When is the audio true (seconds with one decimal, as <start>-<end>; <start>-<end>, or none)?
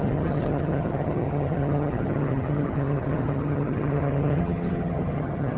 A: none